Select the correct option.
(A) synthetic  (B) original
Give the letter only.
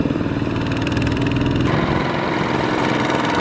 A